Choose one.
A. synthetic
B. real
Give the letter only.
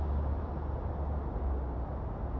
B